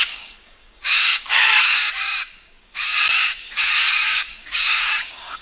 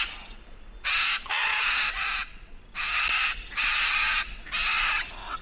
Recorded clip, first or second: second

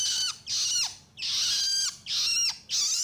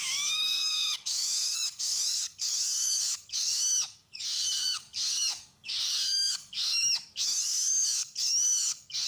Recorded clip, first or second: first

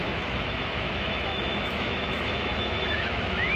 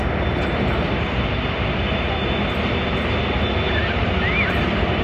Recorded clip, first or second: second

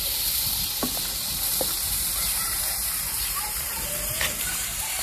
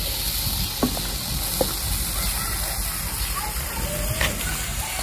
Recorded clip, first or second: second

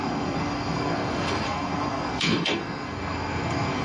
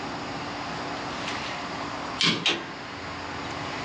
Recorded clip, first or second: second